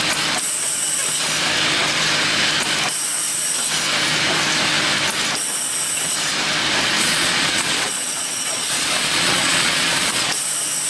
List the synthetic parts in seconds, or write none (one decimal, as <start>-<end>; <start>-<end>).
7.0-10.3